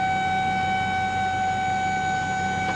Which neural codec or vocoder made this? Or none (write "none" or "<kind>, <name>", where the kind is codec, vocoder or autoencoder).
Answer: none